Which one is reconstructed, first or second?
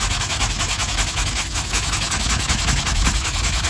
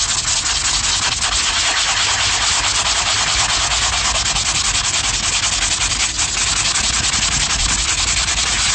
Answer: first